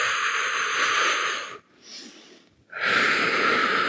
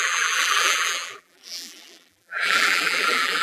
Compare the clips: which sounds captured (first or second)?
first